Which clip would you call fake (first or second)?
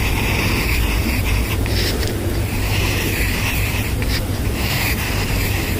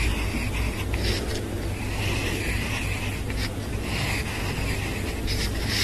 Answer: first